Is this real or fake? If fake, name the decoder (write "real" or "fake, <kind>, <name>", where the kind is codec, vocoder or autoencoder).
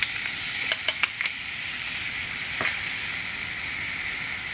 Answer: real